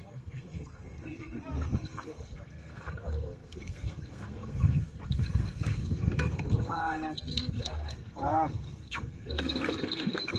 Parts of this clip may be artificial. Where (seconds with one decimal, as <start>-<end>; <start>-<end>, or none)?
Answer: 0.0-10.4